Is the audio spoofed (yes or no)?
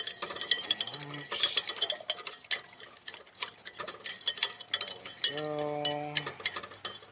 no